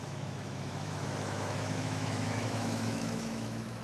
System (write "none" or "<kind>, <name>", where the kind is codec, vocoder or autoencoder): autoencoder, DAC-VAE